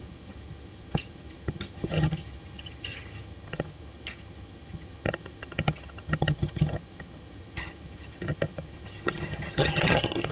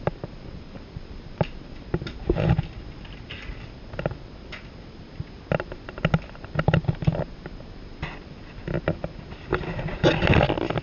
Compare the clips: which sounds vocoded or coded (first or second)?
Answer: first